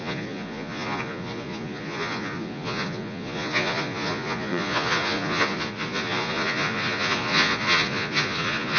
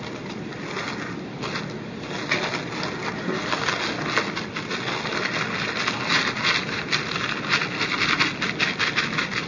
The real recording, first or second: second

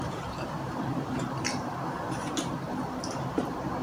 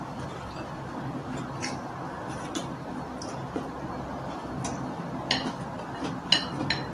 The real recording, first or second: second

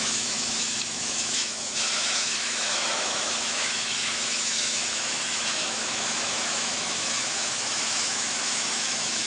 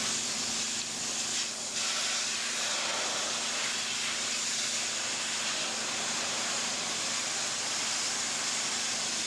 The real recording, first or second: second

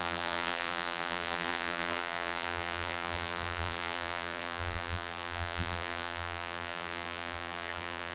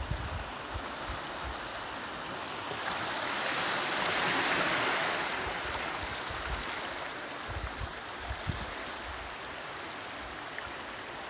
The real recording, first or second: second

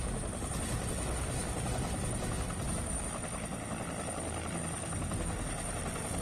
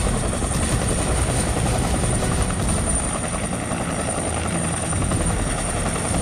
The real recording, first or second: first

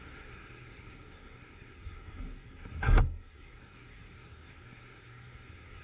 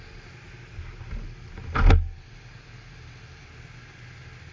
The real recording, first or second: second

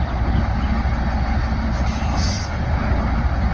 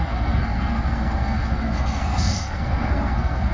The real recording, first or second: first